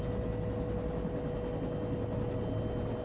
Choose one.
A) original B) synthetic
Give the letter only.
A